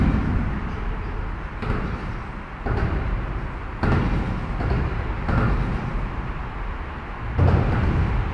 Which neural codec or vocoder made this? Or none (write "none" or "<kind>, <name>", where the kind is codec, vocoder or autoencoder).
none